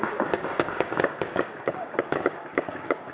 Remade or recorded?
remade